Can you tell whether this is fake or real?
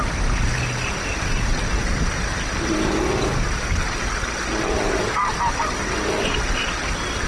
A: real